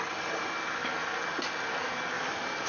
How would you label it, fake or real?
real